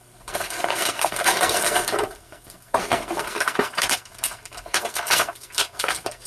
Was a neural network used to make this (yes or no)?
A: yes